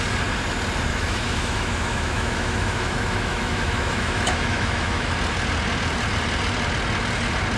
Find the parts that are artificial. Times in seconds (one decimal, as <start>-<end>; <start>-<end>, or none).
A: 0.9-5.1